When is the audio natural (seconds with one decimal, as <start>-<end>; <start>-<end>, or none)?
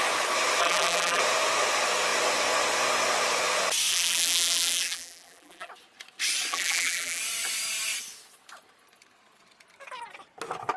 0.0-0.6; 1.2-3.9; 5.7-6.5; 7.2-10.8